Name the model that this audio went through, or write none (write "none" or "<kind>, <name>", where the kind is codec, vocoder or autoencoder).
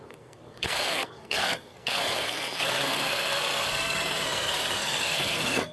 codec, SNAC